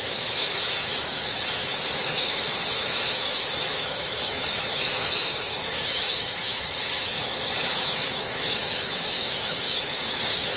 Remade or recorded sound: remade